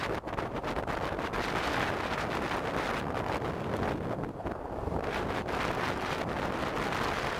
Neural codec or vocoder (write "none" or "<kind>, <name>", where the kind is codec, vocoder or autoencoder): none